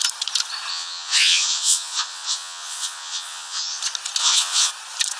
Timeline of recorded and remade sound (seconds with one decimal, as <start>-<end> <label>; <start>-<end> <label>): 0.0-0.7 recorded; 0.7-3.8 remade; 3.8-4.2 recorded; 4.2-4.7 remade; 4.7-5.2 recorded